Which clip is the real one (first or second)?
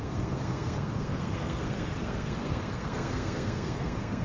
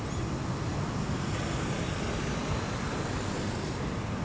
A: second